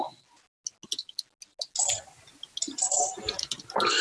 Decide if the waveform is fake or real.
real